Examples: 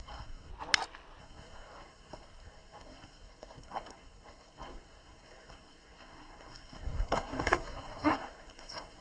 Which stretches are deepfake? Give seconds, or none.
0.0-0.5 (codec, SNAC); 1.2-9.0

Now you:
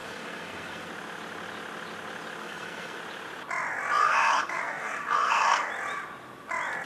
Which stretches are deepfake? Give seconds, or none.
0.0-0.9 (codec, SNAC); 2.4-3.0; 4.0-5.7

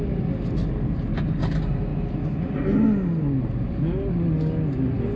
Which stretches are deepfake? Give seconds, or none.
none

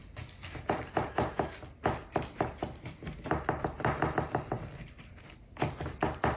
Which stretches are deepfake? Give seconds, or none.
none

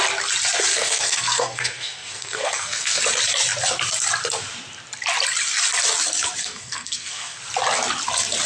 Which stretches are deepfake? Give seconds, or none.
0.7-3.0 (codec, SNAC); 6.4-7.4

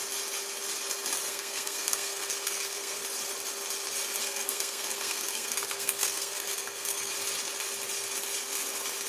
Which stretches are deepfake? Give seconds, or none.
1.3-3.0 (codec, SNAC); 4.2-7.1

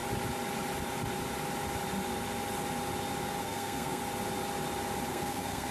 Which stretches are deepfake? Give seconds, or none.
3.4-4.0 (codec, SNAC); 5.1-5.7

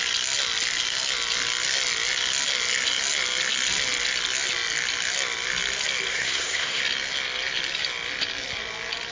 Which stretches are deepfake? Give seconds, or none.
6.1-6.8 (codec, SNAC)